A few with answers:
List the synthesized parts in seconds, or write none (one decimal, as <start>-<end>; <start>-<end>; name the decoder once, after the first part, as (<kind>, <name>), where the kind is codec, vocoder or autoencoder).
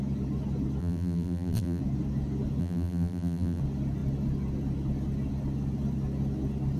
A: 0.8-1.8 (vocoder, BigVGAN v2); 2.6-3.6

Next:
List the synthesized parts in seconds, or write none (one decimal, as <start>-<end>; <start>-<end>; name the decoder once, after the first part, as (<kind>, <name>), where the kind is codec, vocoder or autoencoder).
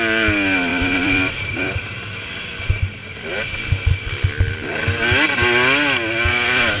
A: 0.7-2.6 (vocoder, BigVGAN v2)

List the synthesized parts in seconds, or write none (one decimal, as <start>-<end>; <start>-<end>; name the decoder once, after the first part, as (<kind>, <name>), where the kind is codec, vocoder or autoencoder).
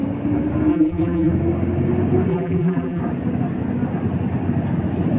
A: 0.7-1.3 (vocoder, BigVGAN v2); 2.3-3.0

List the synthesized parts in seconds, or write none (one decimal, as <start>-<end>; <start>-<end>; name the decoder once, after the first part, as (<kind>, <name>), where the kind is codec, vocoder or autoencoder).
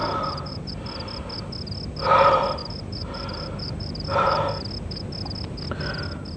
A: 0.0-0.7 (vocoder, BigVGAN v2); 2.6-4.6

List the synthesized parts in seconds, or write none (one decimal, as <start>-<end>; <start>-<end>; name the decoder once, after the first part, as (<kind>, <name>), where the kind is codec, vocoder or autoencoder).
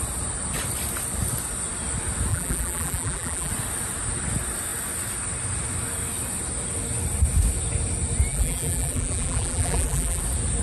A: 2.3-3.5 (vocoder, BigVGAN v2); 8.3-10.2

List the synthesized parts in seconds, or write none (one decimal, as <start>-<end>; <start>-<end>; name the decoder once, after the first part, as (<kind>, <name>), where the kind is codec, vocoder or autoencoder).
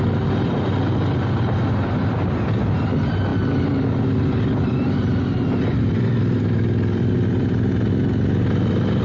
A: none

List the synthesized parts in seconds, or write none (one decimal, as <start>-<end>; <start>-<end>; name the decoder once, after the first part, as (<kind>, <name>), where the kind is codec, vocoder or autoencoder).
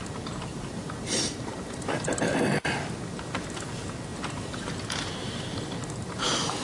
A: 0.5-2.4 (vocoder, BigVGAN v2); 4.1-5.4